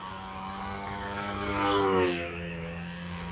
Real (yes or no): no